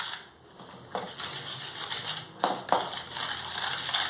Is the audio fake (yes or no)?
no